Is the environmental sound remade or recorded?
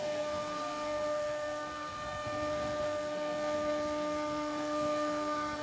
remade